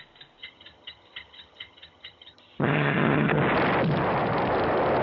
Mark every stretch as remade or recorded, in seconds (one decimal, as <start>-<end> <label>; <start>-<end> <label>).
0.0-0.4 recorded; 0.4-3.4 remade; 3.4-5.0 recorded